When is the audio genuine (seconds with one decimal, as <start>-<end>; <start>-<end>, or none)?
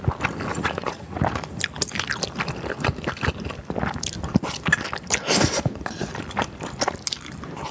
0.0-0.5; 1.2-7.7